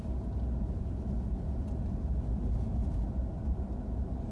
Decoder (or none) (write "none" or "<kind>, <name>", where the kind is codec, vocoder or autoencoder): none